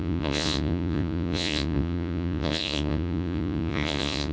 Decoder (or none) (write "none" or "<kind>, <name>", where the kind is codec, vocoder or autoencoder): vocoder, Vocos